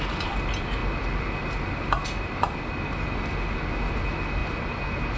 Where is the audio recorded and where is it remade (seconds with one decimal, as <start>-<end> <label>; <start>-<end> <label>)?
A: 0.0-5.2 recorded